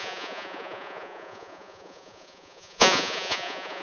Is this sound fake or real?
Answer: fake